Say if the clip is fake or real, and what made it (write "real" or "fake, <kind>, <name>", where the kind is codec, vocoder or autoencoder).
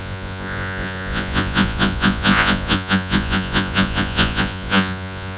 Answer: fake, vocoder, Vocos